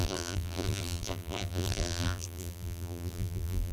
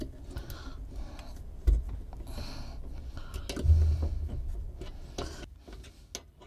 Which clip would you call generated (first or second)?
first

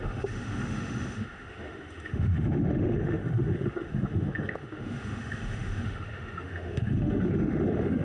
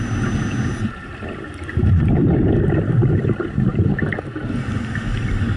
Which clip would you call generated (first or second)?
first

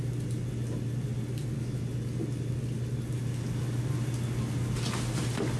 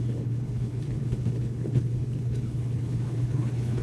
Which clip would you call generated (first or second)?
second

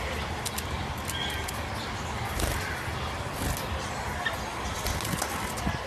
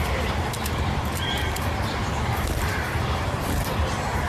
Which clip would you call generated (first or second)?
second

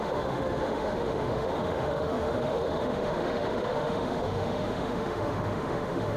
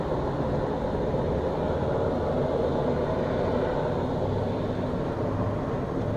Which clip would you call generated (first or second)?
first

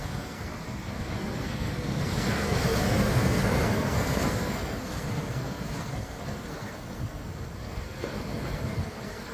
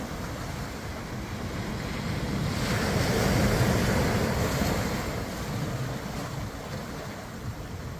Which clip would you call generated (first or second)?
first